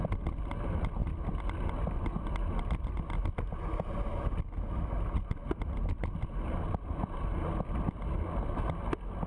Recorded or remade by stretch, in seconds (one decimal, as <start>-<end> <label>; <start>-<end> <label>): 0.0-9.3 recorded